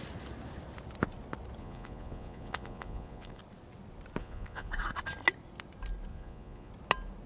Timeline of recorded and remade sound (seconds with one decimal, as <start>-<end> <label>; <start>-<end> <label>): 0.0-1.6 recorded; 1.6-3.4 remade; 3.4-4.2 recorded; 4.2-4.7 remade; 4.7-6.1 recorded; 6.1-6.7 remade; 6.7-7.3 recorded